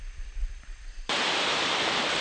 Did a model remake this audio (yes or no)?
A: yes